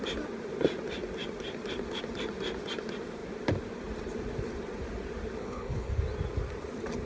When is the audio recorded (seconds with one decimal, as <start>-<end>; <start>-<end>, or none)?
0.0-5.4; 6.0-7.1